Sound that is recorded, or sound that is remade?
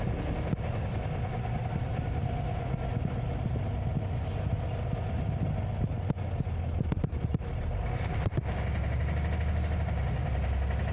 recorded